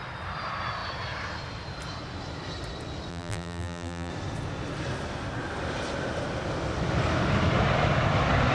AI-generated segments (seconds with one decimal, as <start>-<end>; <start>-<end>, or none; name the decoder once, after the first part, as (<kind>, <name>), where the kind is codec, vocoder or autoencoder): 3.1-4.1 (vocoder, BigVGAN v2)